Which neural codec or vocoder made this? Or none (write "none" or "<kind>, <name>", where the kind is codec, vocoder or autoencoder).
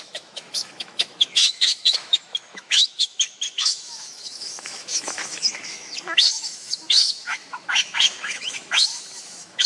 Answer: autoencoder, DAC-VAE